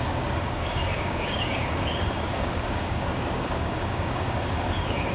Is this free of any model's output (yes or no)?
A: no